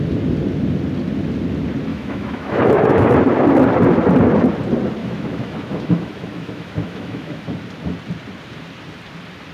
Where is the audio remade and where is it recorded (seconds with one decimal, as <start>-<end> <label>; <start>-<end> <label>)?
0.0-1.9 recorded; 1.9-3.1 remade; 3.1-5.0 recorded; 5.0-7.4 remade; 7.4-9.5 recorded